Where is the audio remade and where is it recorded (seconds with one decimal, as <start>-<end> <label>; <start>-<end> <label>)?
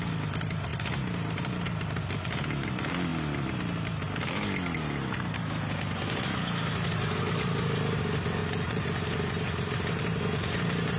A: 0.0-8.4 recorded; 8.4-10.2 remade; 10.2-11.0 recorded